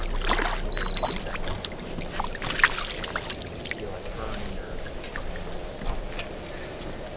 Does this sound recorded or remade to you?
recorded